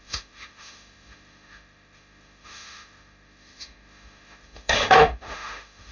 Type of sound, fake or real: fake